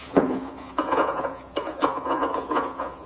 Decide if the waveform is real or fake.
fake